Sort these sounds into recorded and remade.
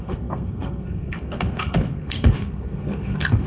remade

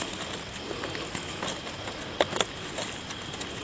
recorded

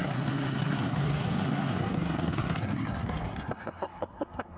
remade